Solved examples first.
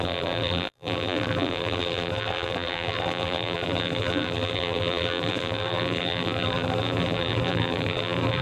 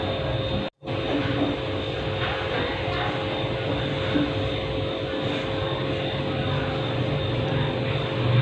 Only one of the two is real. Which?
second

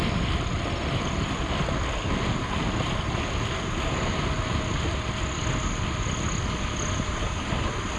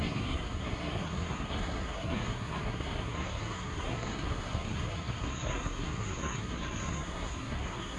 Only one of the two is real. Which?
first